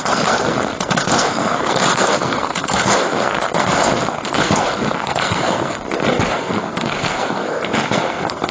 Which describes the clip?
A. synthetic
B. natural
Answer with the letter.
A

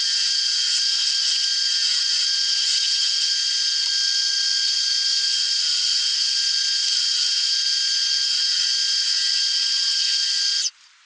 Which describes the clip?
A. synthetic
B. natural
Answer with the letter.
B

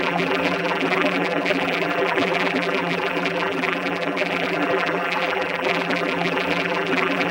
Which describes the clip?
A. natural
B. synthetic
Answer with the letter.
B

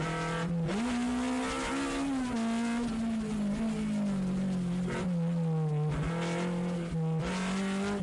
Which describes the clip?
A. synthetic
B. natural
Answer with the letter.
B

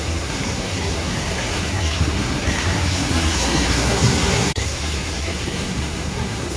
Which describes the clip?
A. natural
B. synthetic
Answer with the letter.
B